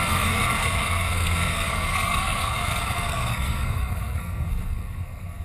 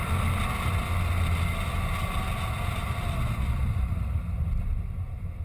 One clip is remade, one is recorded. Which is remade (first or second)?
first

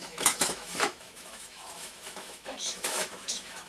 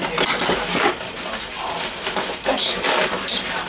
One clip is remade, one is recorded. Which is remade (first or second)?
first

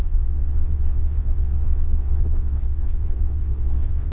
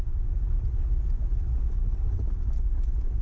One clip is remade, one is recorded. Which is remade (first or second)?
first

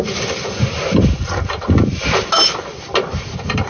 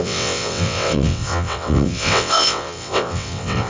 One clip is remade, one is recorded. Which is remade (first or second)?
second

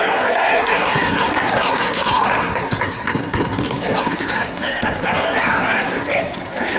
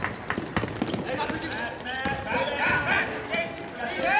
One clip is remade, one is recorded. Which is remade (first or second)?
first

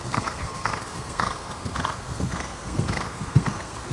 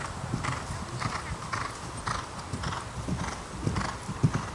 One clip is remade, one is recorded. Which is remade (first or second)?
first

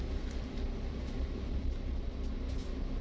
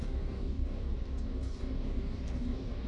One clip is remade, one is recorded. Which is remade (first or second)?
second